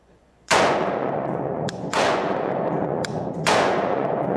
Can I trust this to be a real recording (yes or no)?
no